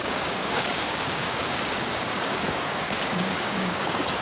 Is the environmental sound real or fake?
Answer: fake